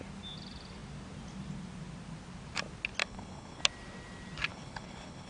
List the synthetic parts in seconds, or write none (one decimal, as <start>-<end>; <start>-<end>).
3.0-3.6; 4.5-5.3